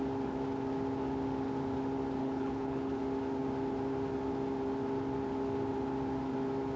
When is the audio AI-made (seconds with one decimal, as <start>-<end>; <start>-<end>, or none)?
2.2-3.0